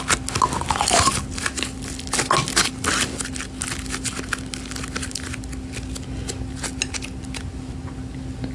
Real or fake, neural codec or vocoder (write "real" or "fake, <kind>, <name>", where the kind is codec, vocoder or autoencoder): real